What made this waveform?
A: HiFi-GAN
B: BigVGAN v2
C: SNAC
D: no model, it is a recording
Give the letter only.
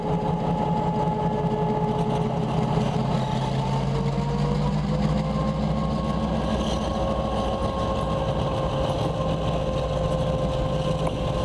D